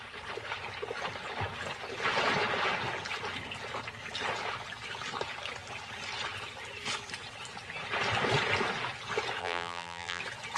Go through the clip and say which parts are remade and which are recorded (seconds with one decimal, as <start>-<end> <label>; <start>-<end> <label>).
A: 0.0-9.4 recorded; 9.4-10.2 remade; 10.2-10.6 recorded